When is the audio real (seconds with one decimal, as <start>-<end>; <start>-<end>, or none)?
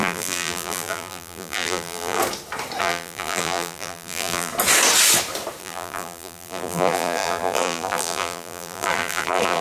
2.2-2.8; 4.5-5.6